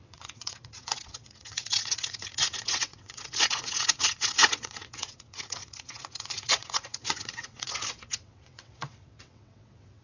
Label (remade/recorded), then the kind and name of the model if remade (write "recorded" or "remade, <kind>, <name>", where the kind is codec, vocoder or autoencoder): remade, vocoder, WaveNeXt